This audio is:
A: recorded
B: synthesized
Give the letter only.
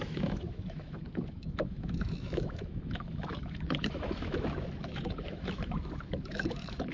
B